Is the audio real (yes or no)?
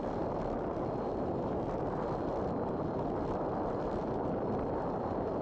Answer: yes